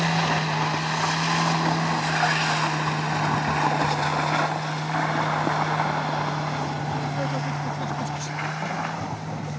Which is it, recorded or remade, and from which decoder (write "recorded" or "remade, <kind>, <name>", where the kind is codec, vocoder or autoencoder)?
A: recorded